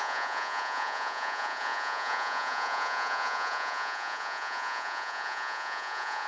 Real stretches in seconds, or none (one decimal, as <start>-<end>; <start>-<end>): none